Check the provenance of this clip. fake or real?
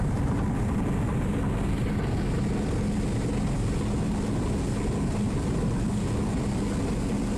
real